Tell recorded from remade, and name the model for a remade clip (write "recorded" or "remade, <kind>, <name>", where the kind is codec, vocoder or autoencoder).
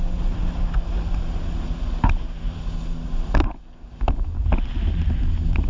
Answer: recorded